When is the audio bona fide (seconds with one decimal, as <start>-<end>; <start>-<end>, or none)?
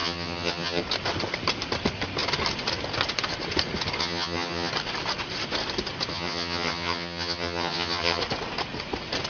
0.8-4.0; 4.7-6.1; 8.2-9.3